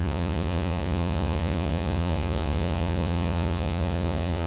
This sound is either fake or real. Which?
fake